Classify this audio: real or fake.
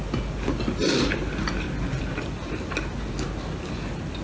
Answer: real